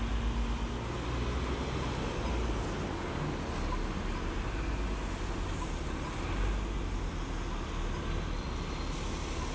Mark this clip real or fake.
real